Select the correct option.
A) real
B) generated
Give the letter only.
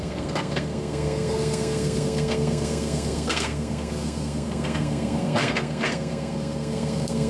B